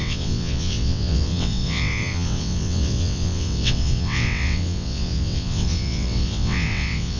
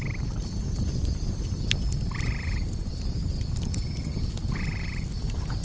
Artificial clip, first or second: first